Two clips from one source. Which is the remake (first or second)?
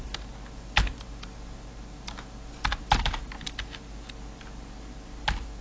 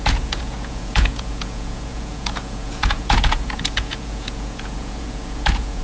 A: second